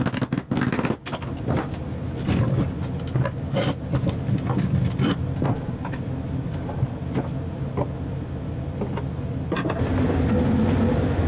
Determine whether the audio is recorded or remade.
recorded